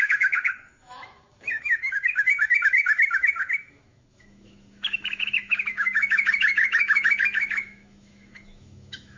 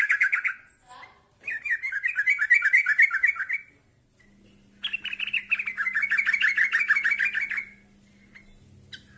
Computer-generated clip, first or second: first